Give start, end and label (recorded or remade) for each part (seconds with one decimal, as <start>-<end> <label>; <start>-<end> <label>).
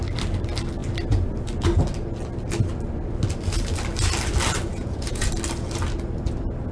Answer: 0.0-4.7 recorded; 4.7-5.3 remade; 5.3-6.7 recorded